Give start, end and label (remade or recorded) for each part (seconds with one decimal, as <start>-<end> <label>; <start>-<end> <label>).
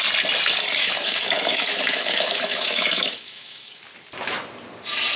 0.0-0.8 recorded; 0.8-3.8 remade; 3.8-5.2 recorded